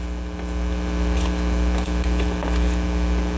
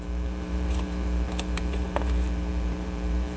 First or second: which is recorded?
first